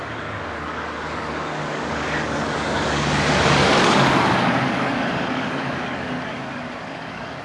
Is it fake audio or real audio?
fake